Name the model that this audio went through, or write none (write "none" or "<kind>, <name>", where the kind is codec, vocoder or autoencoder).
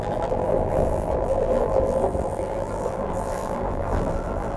vocoder, BigVGAN v2